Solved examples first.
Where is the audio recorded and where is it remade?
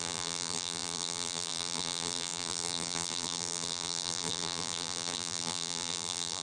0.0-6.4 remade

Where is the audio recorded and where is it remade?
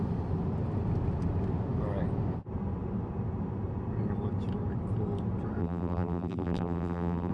0.0-5.6 recorded; 5.6-7.3 remade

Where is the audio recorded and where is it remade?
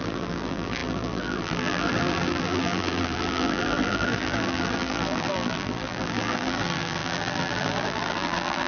0.0-8.7 remade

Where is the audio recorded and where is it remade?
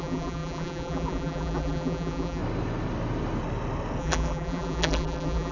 0.0-2.4 remade; 2.4-4.0 recorded; 4.0-5.5 remade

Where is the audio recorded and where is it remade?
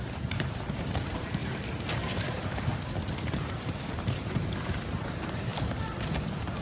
0.0-1.4 remade; 1.4-1.9 recorded; 1.9-5.5 remade; 5.5-6.6 recorded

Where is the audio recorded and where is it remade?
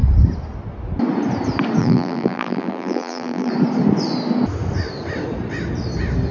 0.0-1.8 recorded; 1.8-3.5 remade; 3.5-6.3 recorded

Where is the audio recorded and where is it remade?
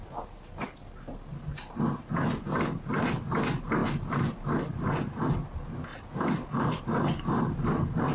0.0-3.8 recorded; 3.8-5.3 remade; 5.3-8.1 recorded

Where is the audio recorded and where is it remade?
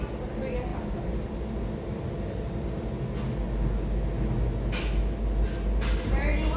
0.0-6.6 recorded